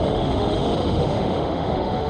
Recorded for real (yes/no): no